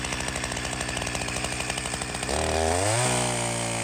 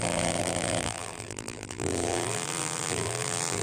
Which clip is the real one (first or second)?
first